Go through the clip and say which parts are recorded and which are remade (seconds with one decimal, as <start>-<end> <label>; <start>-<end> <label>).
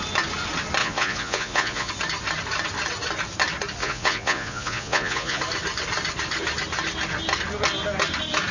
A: 0.0-0.8 recorded; 0.8-1.9 remade; 1.9-3.8 recorded; 3.8-5.4 remade; 5.4-8.5 recorded